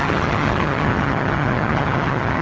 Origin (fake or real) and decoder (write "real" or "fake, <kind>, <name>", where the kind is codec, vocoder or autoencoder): fake, vocoder, HiFi-GAN